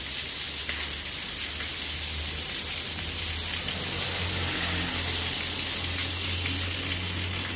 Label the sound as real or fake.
real